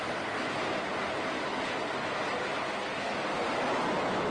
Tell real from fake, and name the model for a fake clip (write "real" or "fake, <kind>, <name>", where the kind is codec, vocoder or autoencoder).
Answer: real